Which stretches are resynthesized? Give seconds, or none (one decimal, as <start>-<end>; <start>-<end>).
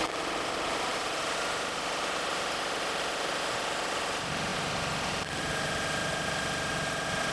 none